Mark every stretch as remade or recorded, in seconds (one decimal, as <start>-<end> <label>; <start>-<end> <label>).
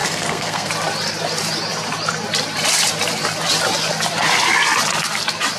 0.0-0.7 remade; 0.7-5.6 recorded